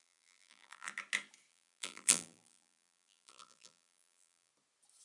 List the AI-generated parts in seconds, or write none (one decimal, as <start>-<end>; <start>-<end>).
0.0-0.9; 1.5-4.5